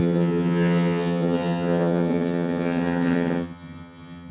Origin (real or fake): fake